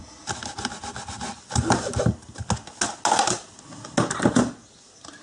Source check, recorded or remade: recorded